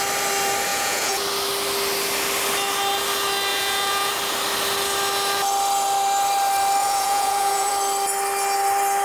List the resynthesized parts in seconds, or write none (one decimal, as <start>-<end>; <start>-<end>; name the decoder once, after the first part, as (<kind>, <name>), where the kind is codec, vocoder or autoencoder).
0.7-1.2 (vocoder, Vocos); 3.5-4.1; 6.8-7.7